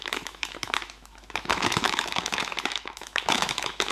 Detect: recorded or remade remade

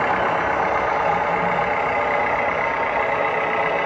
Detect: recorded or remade recorded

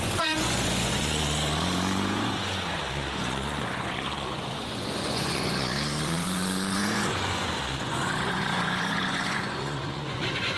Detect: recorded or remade remade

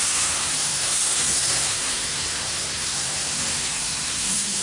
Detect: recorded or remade remade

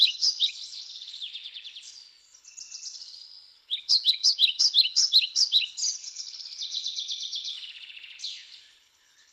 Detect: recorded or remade remade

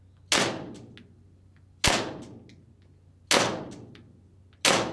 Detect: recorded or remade recorded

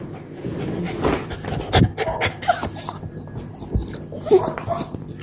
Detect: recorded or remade recorded